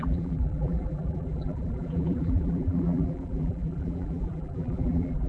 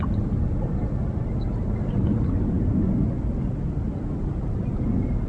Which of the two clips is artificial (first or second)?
first